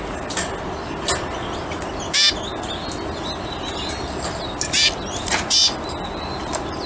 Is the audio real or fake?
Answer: real